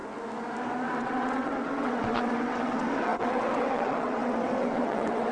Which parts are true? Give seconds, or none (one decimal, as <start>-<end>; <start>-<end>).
0.0-1.0

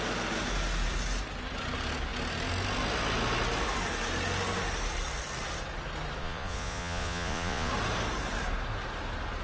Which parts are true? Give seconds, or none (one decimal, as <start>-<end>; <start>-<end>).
0.0-6.2; 7.7-9.4

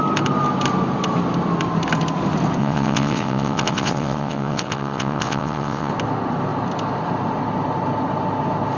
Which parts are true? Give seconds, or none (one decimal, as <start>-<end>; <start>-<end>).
0.0-2.6; 5.9-8.8

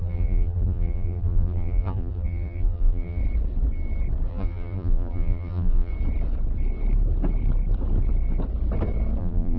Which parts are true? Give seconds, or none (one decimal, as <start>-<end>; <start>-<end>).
3.2-4.3; 5.9-9.2

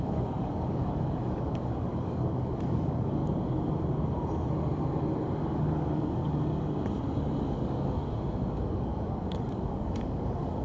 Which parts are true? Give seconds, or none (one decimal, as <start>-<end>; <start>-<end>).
3.2-5.5; 6.2-7.4; 8.0-8.5

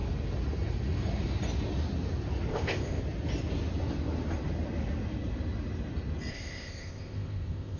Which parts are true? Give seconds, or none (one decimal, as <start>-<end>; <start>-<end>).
0.0-2.5; 3.0-6.3